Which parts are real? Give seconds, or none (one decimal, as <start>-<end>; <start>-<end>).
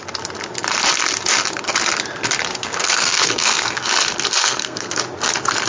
0.0-2.5; 3.9-4.4; 5.0-5.7